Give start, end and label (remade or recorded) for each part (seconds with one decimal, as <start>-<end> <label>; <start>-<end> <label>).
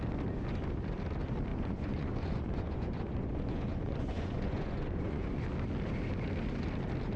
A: 0.0-1.5 recorded; 1.5-5.4 remade; 5.4-7.2 recorded